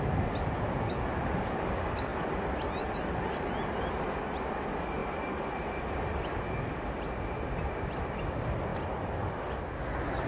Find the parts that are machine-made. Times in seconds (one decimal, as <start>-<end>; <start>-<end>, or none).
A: none